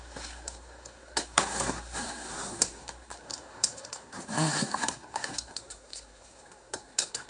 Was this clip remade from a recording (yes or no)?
yes